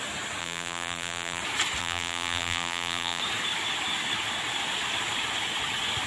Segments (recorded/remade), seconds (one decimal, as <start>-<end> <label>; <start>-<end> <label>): 0.0-0.4 recorded; 0.4-1.4 remade; 1.4-1.8 recorded; 1.8-3.2 remade; 3.2-6.1 recorded